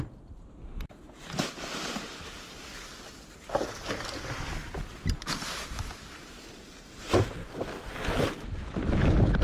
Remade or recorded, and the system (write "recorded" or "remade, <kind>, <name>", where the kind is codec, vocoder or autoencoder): recorded